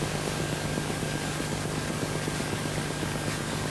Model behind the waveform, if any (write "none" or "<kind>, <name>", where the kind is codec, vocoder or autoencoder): codec, DAC